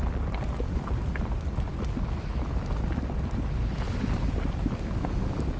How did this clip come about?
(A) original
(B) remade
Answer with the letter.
A